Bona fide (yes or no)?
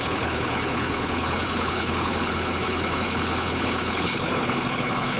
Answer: no